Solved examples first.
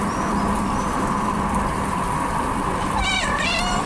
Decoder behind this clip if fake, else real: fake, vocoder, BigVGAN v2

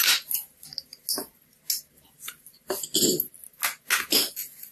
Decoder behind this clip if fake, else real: real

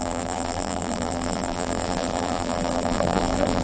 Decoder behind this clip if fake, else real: fake, vocoder, BigVGAN v2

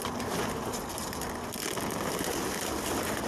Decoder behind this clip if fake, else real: real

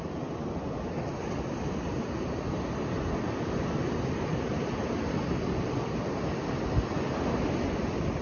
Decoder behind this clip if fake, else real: real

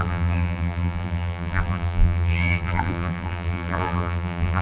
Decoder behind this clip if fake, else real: fake, vocoder, BigVGAN v2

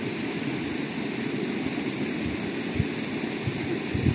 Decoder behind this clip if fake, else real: real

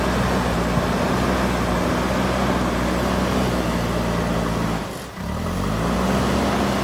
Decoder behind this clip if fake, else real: real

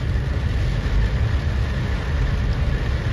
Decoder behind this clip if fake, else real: real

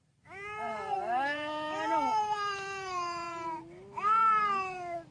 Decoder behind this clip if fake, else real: fake, vocoder, BigVGAN v2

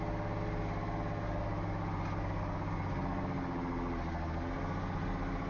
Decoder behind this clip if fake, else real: real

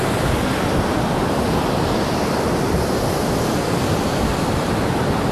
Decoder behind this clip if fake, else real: real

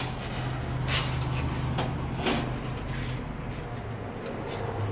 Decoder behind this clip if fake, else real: real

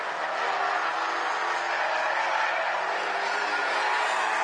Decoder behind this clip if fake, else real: real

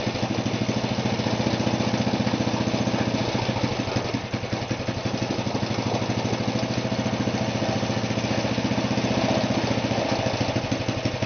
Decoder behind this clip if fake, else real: real